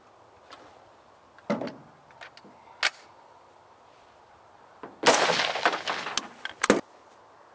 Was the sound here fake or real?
real